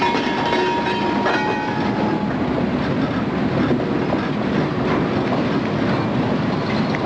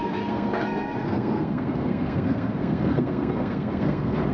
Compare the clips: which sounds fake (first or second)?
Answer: second